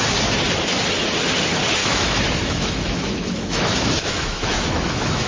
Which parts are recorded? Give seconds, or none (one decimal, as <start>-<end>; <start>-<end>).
0.0-1.8